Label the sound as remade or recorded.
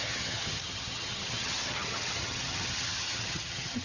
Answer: remade